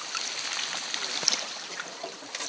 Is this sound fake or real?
real